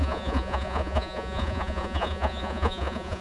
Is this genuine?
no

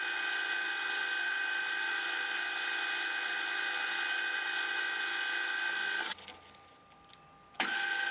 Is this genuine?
yes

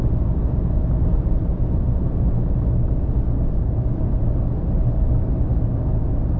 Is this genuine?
yes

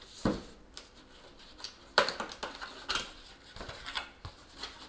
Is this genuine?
yes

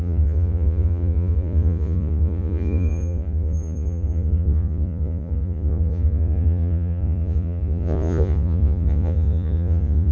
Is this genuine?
no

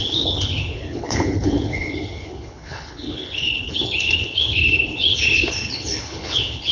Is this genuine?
no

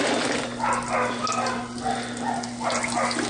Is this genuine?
yes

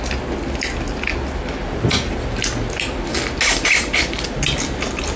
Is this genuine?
yes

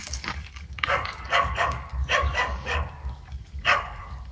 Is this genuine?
no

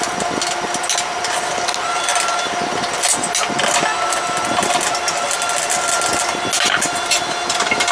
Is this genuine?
yes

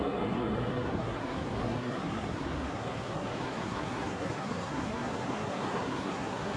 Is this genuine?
no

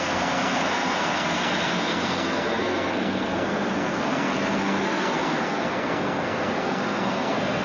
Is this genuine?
no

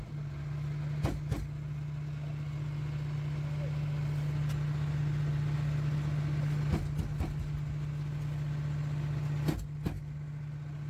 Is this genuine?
yes